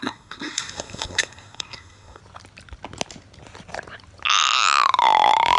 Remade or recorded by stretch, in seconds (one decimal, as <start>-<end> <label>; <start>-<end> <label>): 0.0-2.2 remade; 2.2-5.6 recorded